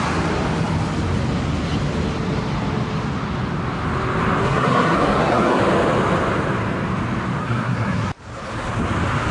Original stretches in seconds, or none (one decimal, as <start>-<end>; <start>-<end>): 0.0-4.4; 5.6-7.4; 8.1-9.3